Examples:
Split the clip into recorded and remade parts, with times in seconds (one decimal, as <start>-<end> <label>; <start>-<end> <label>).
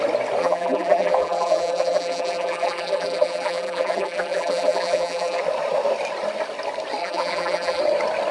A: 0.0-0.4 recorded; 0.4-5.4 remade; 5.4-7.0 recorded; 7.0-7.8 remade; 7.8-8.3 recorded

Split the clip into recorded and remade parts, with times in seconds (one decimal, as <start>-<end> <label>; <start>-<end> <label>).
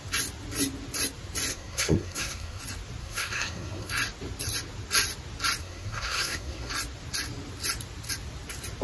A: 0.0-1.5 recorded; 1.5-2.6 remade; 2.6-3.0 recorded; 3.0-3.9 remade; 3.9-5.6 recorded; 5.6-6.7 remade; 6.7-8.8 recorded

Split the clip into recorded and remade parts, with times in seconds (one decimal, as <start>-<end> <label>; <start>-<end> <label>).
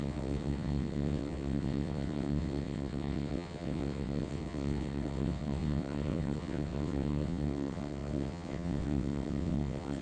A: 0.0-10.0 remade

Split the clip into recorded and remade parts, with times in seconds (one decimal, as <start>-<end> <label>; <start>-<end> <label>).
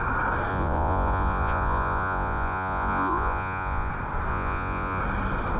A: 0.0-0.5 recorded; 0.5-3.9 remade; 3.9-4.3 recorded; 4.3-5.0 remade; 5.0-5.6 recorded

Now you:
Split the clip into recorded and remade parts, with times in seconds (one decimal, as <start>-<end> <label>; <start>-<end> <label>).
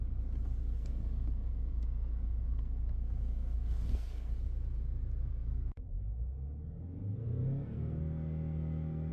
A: 0.0-0.6 recorded; 0.6-4.3 remade; 4.3-5.2 recorded; 5.2-9.1 remade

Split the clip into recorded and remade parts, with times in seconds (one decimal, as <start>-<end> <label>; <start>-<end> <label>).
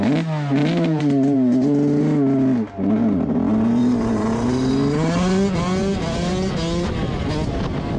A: 0.0-0.6 recorded; 0.6-2.0 remade; 2.0-3.8 recorded; 3.8-4.7 remade; 4.7-8.0 recorded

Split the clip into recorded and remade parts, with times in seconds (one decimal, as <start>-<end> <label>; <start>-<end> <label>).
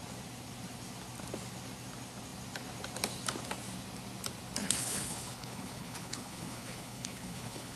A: 0.0-4.6 recorded; 4.6-7.8 remade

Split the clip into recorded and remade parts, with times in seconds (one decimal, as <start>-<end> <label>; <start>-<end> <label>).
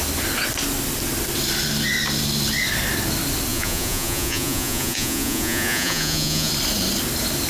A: 0.0-3.5 recorded; 3.5-6.5 remade; 6.5-7.5 recorded